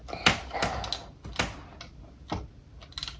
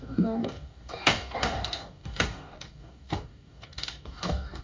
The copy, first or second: second